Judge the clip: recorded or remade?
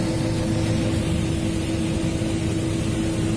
recorded